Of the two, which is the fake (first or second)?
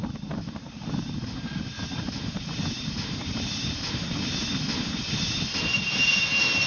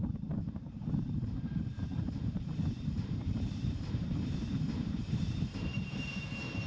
second